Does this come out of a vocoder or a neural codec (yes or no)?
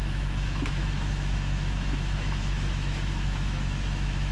yes